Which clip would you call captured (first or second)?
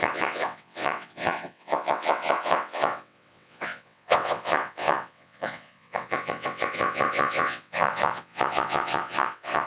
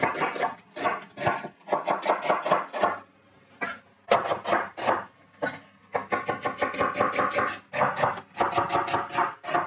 second